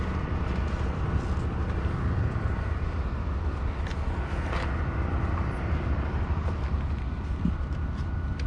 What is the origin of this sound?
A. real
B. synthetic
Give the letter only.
A